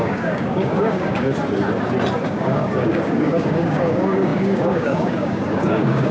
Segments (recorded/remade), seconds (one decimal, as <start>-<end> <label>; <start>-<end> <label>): 0.0-1.3 remade; 1.3-2.2 recorded; 2.2-6.1 remade